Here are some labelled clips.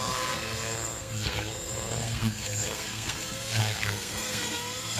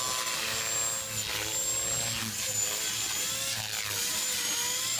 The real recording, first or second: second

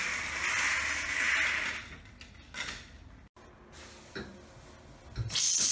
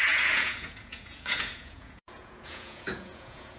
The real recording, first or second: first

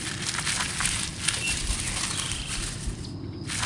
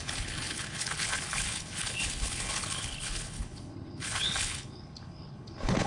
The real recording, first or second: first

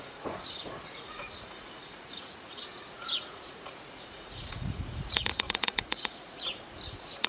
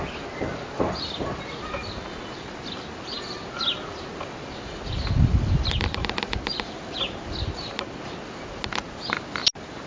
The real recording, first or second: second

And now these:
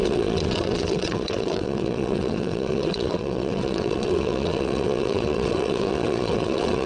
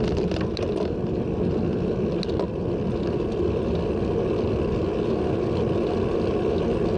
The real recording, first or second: second